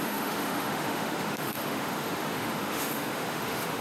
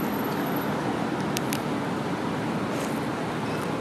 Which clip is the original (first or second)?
second